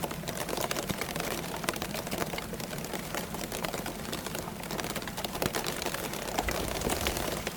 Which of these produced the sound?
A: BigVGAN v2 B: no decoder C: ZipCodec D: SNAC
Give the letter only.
A